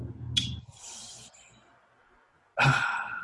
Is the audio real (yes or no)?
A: yes